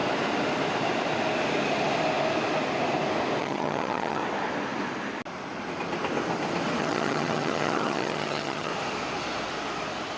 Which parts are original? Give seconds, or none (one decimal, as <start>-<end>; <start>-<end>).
0.0-3.4; 4.2-6.8; 8.7-10.2